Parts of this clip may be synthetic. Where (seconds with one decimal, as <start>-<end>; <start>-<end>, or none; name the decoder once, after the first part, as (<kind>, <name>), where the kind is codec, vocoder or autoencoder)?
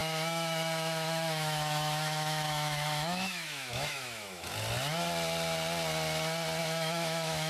0.0-4.5 (autoencoder, DAC-VAE); 6.6-7.5